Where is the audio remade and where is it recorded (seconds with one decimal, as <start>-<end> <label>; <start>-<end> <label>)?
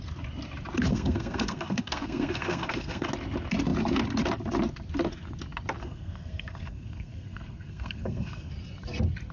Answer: 0.0-0.9 recorded; 0.9-3.1 remade; 3.1-5.8 recorded; 5.8-8.5 remade; 8.5-9.3 recorded